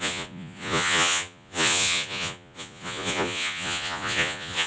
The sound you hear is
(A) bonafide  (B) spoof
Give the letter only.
B